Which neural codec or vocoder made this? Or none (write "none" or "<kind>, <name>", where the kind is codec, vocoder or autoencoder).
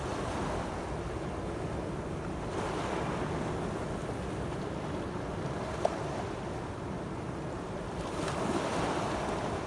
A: none